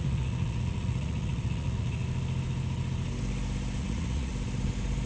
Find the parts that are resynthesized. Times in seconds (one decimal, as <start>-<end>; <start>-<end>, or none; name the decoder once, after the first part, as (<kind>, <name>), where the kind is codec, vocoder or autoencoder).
0.0-2.0 (vocoder, Vocos); 3.8-4.3